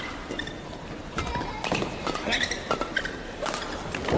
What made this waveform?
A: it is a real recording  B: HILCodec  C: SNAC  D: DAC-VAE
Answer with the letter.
A